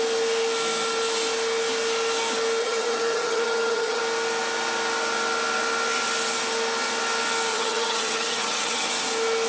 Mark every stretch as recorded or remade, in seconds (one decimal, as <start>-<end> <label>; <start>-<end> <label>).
0.0-2.6 recorded; 2.6-4.0 remade; 4.0-7.5 recorded; 7.5-8.9 remade; 8.9-9.5 recorded